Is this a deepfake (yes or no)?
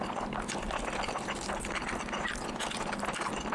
no